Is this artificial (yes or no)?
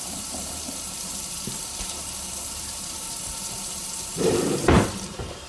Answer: yes